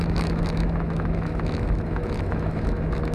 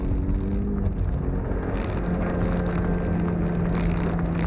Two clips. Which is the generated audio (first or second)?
first